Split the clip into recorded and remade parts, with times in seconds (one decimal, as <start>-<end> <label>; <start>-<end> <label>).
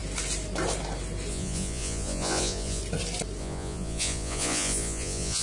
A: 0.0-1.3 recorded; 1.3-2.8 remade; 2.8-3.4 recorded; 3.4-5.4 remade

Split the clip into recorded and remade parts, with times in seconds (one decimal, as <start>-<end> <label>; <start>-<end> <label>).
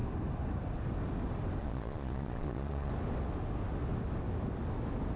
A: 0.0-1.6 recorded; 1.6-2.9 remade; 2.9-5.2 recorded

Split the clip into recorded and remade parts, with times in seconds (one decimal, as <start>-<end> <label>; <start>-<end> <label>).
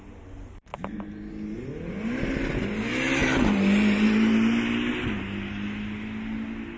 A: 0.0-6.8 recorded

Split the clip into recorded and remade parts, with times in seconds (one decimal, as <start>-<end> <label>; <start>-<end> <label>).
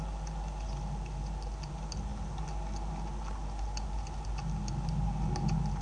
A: 0.0-5.8 recorded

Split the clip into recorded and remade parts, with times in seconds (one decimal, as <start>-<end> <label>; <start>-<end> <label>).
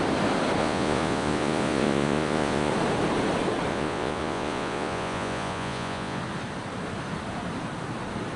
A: 0.0-0.6 recorded; 0.6-2.7 remade; 2.7-3.7 recorded; 3.7-6.2 remade; 6.2-8.4 recorded